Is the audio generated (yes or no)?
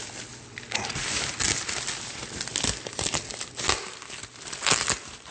no